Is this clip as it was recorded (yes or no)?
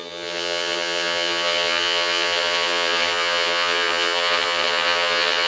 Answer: no